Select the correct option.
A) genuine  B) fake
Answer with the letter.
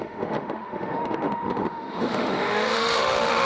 B